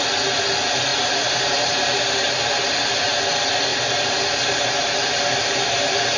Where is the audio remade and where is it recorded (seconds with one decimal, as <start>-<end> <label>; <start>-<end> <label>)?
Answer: 0.0-0.9 recorded; 0.9-2.0 remade; 2.0-3.7 recorded; 3.7-6.2 remade

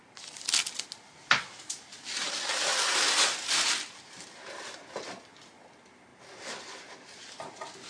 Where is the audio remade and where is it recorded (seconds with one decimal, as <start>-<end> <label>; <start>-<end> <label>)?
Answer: 0.0-2.2 recorded; 2.2-3.0 remade; 3.0-7.9 recorded